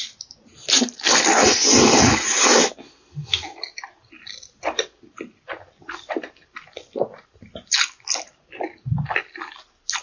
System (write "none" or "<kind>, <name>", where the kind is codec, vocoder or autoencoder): none